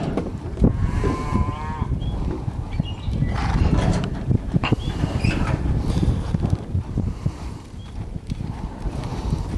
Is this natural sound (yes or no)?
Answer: no